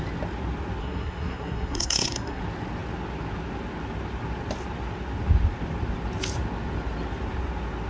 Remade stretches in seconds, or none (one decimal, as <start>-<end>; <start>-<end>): 0.8-2.4